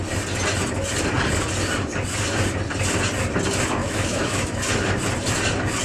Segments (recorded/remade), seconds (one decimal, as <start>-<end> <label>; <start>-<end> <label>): 0.0-3.8 recorded; 3.8-4.6 remade; 4.6-5.8 recorded